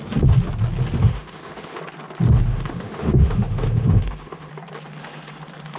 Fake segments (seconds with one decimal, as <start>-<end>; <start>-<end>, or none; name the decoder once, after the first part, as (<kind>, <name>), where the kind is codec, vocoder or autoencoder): 1.0-1.8 (autoencoder, DAC-VAE); 2.5-4.5